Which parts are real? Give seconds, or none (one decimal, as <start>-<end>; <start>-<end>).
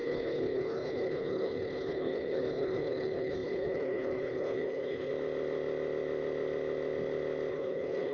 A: 5.1-7.5